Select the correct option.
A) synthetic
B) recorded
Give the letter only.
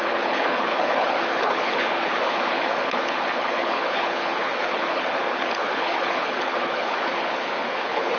A